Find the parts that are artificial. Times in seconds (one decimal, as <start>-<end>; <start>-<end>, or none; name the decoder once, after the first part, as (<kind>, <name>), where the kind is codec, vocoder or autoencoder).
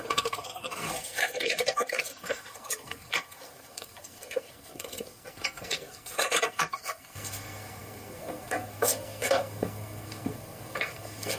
0.0-11.4 (codec, SNAC)